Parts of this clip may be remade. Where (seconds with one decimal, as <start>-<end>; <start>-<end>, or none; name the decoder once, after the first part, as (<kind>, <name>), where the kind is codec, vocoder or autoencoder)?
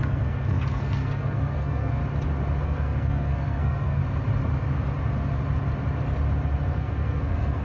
0.0-2.0 (codec, SNAC); 2.6-4.0; 6.8-7.6